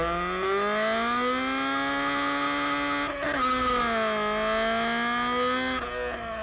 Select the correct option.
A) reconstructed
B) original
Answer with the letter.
B